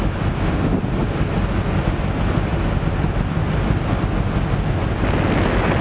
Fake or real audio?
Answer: real